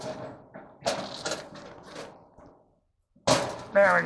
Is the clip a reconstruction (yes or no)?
no